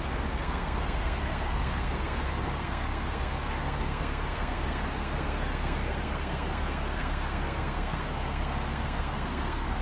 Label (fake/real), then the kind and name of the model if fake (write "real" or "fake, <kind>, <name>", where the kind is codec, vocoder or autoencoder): fake, codec, SNAC